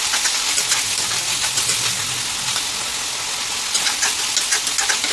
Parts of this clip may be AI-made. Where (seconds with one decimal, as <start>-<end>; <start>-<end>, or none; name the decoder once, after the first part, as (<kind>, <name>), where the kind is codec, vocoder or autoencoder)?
none